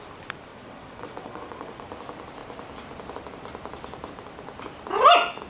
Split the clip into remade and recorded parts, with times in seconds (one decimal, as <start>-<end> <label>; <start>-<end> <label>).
0.0-0.5 recorded; 0.5-1.8 remade; 1.8-5.5 recorded